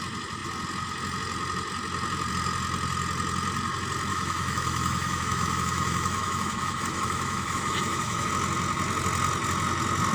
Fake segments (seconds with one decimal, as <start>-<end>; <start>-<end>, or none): 4.1-8.3